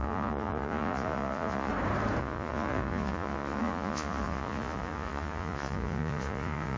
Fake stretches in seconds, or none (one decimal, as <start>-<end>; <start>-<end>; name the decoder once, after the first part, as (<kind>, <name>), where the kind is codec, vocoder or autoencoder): 0.0-1.7 (vocoder, Vocos); 2.2-6.8